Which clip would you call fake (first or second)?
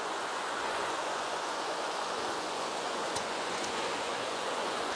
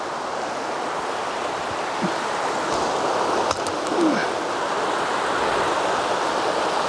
first